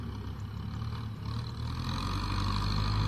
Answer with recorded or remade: recorded